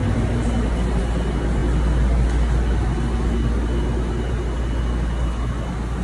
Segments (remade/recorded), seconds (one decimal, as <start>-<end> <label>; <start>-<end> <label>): 0.0-6.0 recorded